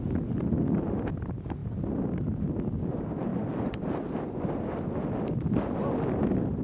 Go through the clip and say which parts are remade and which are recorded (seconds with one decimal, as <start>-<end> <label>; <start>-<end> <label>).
0.0-6.6 recorded